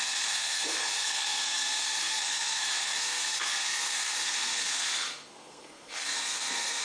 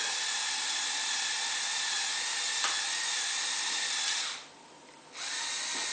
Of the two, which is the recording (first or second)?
second